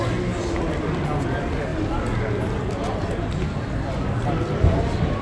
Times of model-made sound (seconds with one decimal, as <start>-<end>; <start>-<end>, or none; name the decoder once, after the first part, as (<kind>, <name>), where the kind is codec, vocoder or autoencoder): none